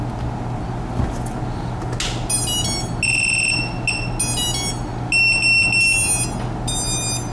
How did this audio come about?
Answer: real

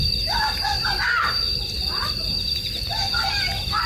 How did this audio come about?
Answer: fake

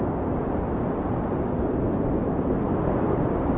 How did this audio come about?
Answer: fake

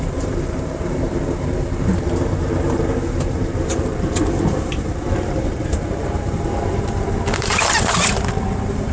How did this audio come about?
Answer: fake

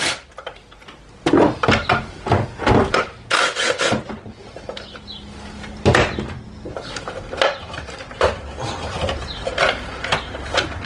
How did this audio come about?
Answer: real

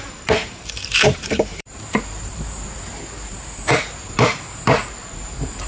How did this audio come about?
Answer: fake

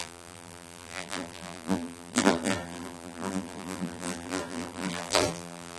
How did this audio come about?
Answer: fake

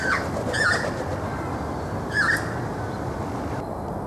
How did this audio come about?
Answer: real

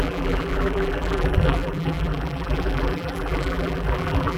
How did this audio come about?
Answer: fake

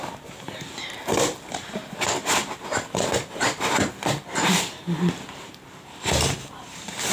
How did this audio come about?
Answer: fake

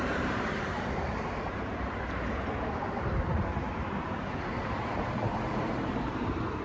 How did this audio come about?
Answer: fake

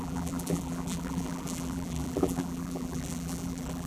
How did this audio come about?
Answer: fake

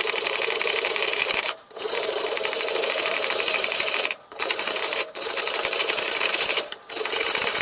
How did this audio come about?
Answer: fake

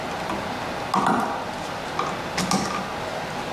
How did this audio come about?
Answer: real